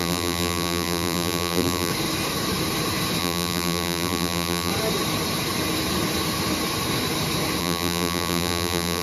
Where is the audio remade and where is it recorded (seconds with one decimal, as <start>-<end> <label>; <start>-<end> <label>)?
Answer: 0.0-1.9 remade; 1.9-3.2 recorded; 3.2-4.7 remade; 4.7-7.6 recorded; 7.6-9.0 remade